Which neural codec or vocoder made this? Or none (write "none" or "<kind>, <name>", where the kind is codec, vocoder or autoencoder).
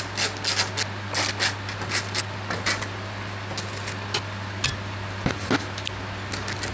none